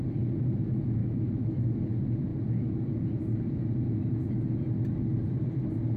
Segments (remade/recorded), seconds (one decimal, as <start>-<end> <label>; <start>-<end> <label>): 0.0-1.0 recorded; 1.0-1.8 remade; 1.8-6.0 recorded